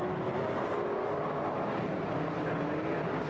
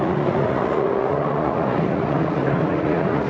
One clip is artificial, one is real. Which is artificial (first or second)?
second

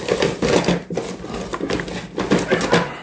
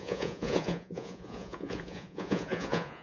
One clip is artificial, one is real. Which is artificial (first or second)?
second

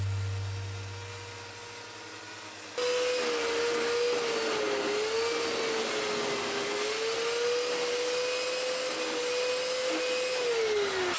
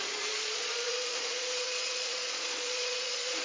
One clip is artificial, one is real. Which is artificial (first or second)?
second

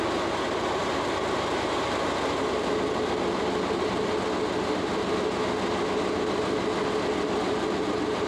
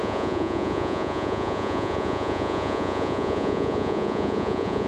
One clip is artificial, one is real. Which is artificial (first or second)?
second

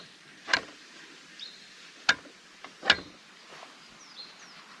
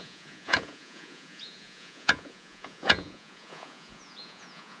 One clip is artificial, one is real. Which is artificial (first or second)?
second